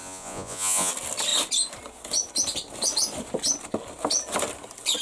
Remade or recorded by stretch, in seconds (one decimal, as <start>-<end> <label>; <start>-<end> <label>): 0.0-0.9 remade; 0.9-5.0 recorded